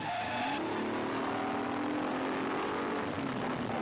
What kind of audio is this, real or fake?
real